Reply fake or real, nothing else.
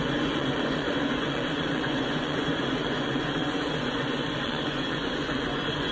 fake